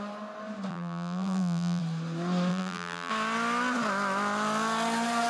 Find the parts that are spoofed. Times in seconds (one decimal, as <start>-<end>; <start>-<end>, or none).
0.7-1.8; 2.5-3.1